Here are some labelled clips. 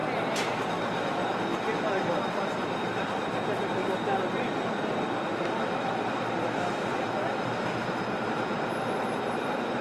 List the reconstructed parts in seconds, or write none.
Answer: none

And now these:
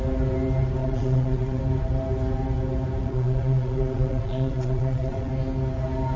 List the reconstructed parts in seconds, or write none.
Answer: 0.8-1.6; 3.0-5.3

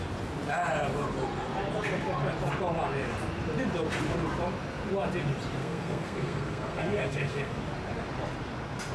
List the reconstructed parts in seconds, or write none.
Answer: 5.6-7.6

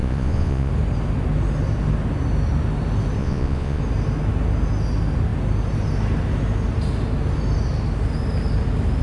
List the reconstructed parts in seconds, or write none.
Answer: 0.0-0.7; 3.2-3.8